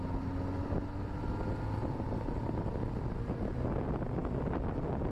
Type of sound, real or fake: real